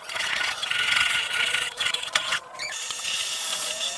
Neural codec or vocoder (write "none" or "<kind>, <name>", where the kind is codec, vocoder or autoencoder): vocoder, Vocos